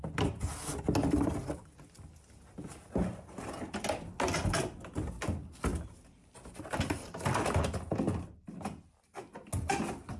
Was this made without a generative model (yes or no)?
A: yes